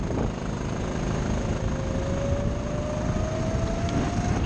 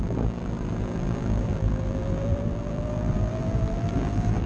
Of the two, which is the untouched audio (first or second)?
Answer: first